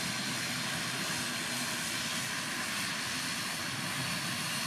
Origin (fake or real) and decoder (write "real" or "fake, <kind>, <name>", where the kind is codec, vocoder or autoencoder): real